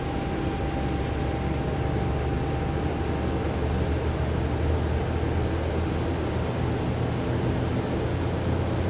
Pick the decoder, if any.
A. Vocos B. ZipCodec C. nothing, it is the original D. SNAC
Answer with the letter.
C